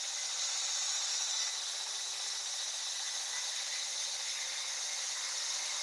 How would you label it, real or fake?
real